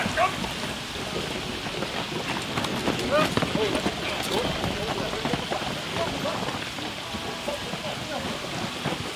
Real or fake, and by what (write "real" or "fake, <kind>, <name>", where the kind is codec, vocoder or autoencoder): real